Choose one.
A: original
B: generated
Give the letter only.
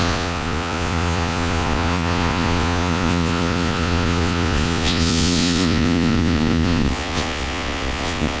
B